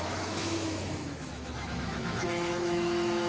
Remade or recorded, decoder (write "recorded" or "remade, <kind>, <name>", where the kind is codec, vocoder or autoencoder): remade, autoencoder, DAC-VAE